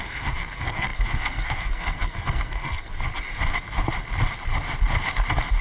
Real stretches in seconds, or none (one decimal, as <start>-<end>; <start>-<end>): 2.9-5.6